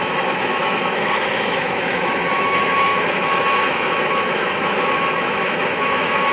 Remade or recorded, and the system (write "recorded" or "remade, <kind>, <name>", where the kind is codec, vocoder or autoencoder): remade, autoencoder, DAC-VAE